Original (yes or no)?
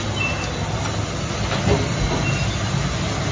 yes